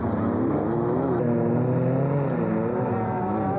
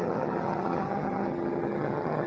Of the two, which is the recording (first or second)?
first